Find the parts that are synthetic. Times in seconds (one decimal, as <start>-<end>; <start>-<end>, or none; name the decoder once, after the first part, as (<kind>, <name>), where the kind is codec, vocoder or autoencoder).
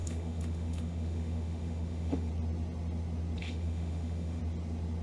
0.0-2.3 (autoencoder, DAC-VAE); 3.4-4.4